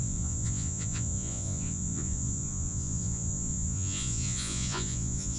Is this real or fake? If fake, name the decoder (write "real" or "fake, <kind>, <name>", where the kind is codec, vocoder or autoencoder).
fake, vocoder, Vocos